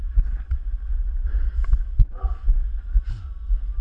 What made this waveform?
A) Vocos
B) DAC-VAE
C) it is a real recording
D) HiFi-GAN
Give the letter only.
C